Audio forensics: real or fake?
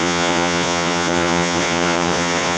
fake